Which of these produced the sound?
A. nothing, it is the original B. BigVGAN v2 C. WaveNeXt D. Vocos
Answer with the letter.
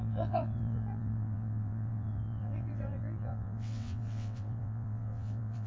C